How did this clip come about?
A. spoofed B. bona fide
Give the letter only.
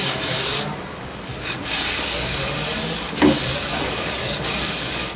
A